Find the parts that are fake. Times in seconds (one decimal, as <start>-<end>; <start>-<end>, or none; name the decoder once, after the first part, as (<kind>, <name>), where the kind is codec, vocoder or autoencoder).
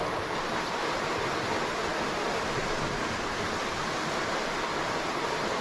none